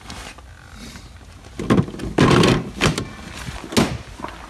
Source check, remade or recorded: recorded